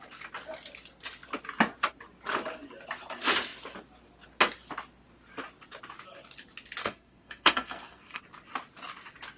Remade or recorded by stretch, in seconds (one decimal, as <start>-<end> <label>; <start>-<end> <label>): 0.0-6.8 recorded; 6.8-8.2 remade; 8.2-9.4 recorded